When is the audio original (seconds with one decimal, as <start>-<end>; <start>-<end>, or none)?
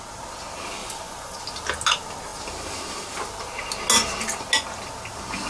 0.0-0.8; 1.4-5.5